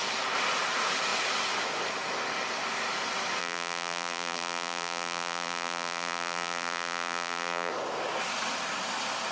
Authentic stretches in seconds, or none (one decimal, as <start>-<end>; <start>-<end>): 0.0-3.4; 7.7-9.3